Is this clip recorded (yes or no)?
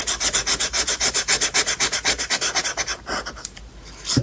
yes